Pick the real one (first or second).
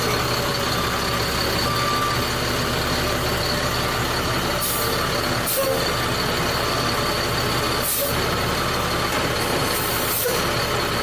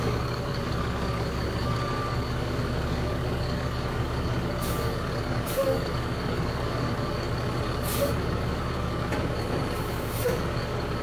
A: first